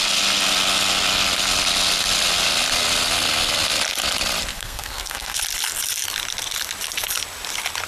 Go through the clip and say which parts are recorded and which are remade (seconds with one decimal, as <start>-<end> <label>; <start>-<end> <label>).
0.0-4.5 recorded; 4.5-5.4 remade; 5.4-7.9 recorded